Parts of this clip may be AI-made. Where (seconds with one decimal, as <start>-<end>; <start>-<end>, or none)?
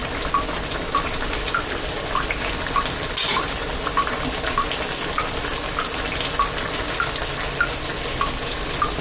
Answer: none